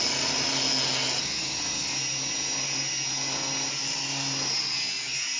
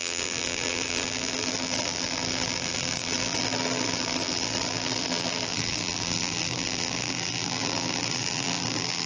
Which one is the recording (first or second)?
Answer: first